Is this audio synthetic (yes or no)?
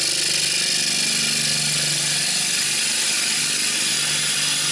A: no